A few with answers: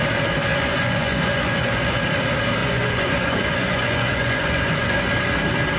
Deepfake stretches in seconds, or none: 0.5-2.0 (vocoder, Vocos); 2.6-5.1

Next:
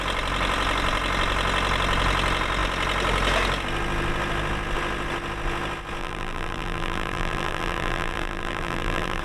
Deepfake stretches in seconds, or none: 6.0-9.2 (vocoder, BigVGAN v2)

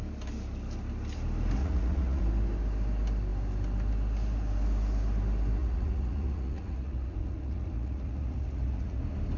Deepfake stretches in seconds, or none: 1.6-2.2 (vocoder, Vocos); 5.6-9.0

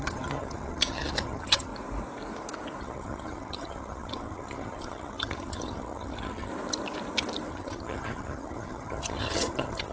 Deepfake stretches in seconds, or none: 0.0-1.7 (vocoder, HiFi-GAN); 2.8-6.5; 7.5-9.9

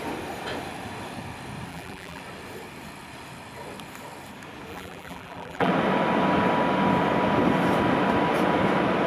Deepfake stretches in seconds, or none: 1.7-2.2 (vocoder, BigVGAN v2); 4.7-5.7

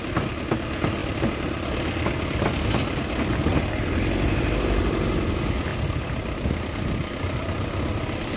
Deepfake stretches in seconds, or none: none

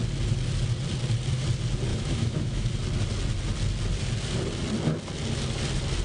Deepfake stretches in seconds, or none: 1.9-2.7 (autoencoder, DAC-VAE)

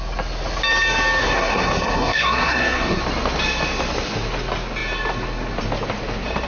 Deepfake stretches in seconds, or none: 1.2-3.0 (codec, SNAC)